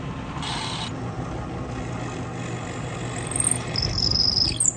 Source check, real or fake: real